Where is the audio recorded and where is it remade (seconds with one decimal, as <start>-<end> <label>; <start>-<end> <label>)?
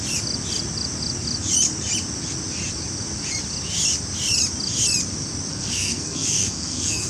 0.0-5.5 recorded; 5.5-7.1 remade